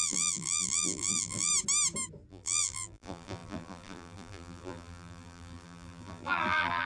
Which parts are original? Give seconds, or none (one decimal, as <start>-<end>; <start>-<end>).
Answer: 1.5-2.3